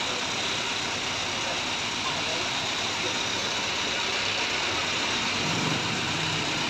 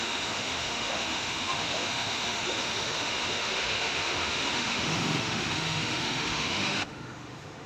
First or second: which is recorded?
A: first